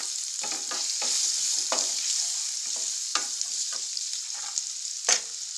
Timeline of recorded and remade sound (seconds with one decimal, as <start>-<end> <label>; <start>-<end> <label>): 0.0-3.1 recorded; 3.1-4.2 remade; 4.2-5.6 recorded